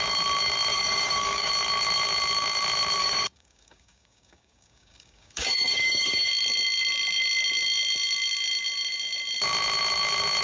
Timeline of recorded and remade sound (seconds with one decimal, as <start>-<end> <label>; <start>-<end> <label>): 0.0-0.7 recorded; 0.7-1.5 remade; 1.5-3.0 recorded; 3.0-6.3 remade; 6.3-10.4 recorded